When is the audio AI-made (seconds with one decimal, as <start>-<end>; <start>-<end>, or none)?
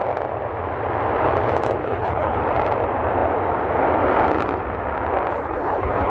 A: 1.8-2.4; 5.3-6.1